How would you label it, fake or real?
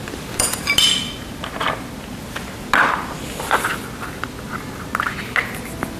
real